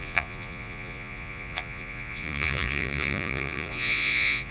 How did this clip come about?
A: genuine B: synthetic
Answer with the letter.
B